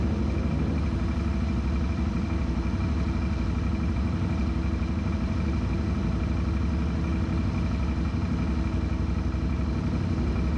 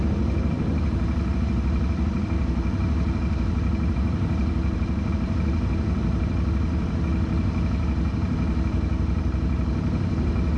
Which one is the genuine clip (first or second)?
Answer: first